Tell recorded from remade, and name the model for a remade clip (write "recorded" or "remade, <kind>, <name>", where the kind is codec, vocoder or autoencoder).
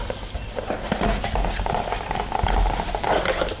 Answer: recorded